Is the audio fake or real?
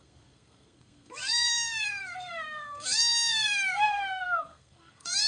fake